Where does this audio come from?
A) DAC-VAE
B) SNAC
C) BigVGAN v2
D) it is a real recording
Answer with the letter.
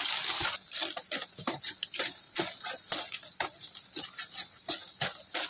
D